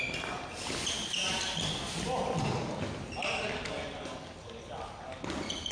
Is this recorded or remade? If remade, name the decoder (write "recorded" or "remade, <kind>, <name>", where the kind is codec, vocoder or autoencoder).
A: recorded